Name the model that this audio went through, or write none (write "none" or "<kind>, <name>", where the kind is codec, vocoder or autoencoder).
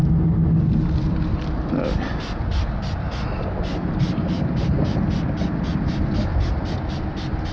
none